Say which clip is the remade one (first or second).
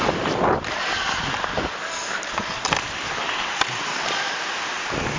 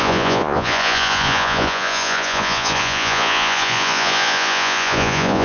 second